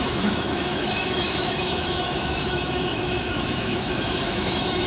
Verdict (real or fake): fake